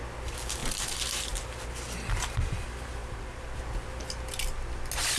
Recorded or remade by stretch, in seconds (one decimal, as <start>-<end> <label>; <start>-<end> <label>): 0.0-0.6 recorded; 0.6-1.5 remade; 1.5-3.0 recorded; 3.0-3.6 remade; 3.6-5.2 recorded